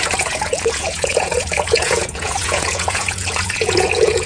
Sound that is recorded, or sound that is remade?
remade